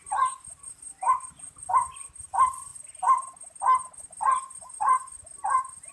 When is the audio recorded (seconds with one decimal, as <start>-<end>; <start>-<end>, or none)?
0.0-5.9